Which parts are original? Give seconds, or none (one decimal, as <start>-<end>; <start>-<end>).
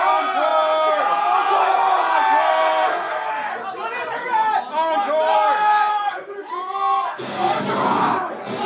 0.0-2.5; 3.3-5.9; 7.6-8.7